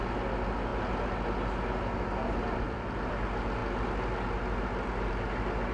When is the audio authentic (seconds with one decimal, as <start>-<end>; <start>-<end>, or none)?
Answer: 0.0-5.7